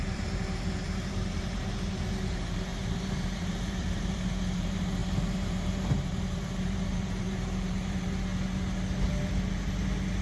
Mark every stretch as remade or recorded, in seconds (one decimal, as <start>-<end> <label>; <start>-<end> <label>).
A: 0.0-8.3 remade; 8.3-9.5 recorded; 9.5-10.2 remade